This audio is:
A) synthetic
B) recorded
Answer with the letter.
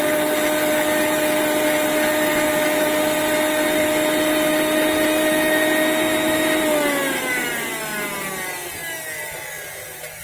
B